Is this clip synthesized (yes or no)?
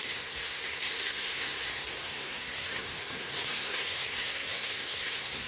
yes